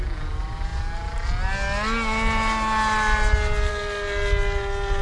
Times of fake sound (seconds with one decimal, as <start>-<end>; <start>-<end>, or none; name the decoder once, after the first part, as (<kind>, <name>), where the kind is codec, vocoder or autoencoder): none